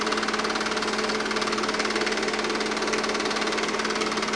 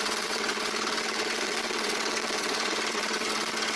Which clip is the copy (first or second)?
second